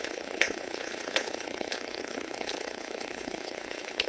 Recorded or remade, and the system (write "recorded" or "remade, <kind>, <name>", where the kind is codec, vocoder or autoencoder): remade, codec, HILCodec